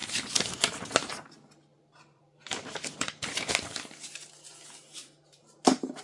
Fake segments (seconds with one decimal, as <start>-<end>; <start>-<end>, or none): 0.0-3.5; 5.0-6.0